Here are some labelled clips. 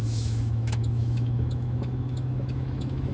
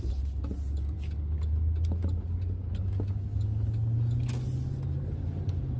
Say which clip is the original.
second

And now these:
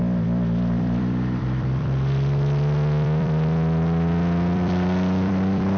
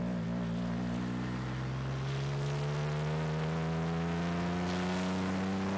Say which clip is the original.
second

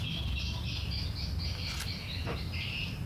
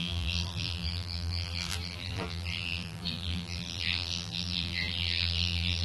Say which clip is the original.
first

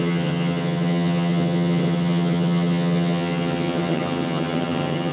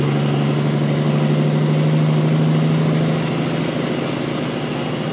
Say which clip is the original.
second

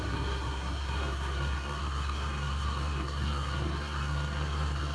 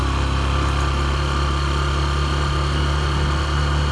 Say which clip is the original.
second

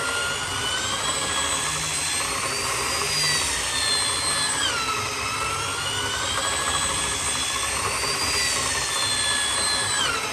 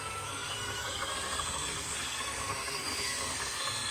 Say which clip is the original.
first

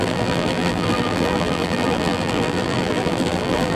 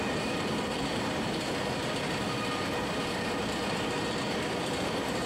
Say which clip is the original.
second